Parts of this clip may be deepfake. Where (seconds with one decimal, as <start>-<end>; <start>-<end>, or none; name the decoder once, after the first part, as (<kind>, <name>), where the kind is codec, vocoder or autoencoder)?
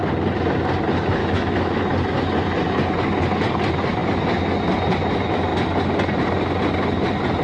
1.2-1.8 (autoencoder, DAC-VAE)